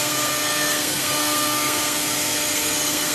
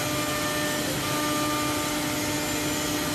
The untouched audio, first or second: second